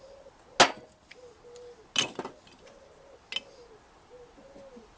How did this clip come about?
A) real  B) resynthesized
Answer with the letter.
A